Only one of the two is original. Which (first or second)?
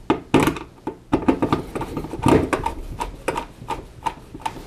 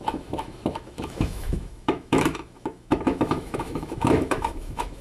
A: first